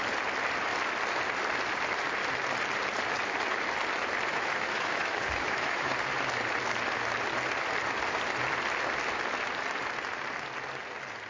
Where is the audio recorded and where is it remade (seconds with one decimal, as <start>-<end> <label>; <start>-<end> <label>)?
0.0-4.3 recorded; 4.3-5.9 remade; 5.9-11.3 recorded